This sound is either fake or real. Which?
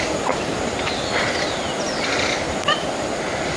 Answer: real